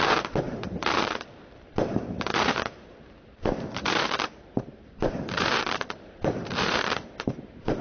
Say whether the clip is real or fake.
fake